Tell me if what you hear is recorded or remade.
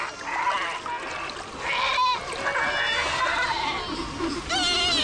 recorded